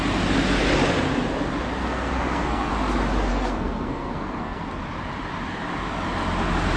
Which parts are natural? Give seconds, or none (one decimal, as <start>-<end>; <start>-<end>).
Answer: 0.0-1.8; 2.7-3.3; 4.7-6.8